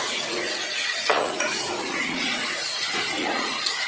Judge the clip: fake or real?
fake